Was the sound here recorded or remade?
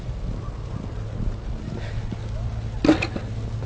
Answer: recorded